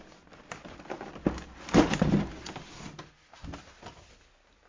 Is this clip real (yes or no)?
yes